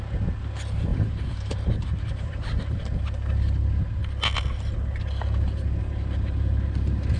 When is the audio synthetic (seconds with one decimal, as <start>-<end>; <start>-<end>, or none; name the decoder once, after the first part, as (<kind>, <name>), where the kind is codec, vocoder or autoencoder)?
0.9-2.8 (vocoder, BigVGAN v2)